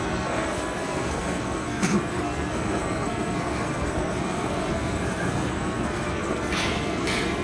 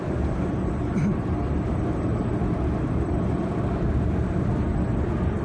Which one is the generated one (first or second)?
first